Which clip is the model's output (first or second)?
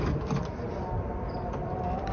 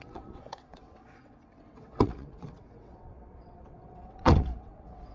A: second